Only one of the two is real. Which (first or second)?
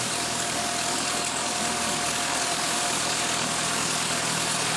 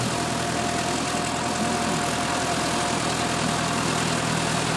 second